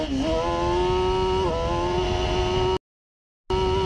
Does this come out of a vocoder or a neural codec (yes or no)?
no